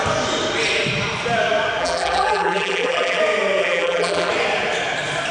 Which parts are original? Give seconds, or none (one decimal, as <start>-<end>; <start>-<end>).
0.0-1.8; 3.2-3.6; 4.3-5.3